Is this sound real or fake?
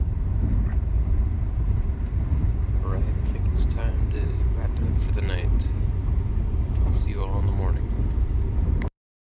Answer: fake